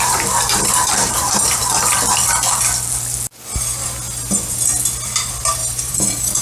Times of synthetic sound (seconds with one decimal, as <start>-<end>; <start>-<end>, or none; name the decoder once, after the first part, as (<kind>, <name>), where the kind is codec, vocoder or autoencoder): 0.0-1.6 (vocoder, BigVGAN v2); 5.4-6.4